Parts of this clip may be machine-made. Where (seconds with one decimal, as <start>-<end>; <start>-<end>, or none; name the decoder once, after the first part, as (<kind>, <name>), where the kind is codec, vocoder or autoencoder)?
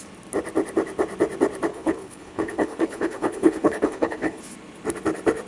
1.7-4.4 (codec, HILCodec)